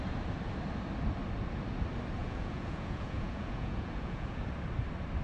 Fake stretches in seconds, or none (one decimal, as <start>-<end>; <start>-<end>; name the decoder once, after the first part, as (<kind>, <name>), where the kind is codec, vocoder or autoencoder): 2.2-4.4 (vocoder, Vocos)